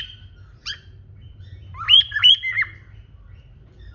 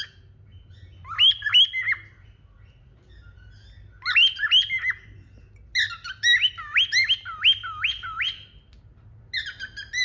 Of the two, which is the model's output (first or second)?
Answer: first